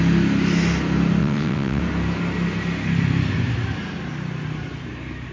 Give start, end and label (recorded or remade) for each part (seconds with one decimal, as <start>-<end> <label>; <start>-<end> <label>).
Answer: 0.0-1.2 recorded; 1.2-1.8 remade; 1.8-5.3 recorded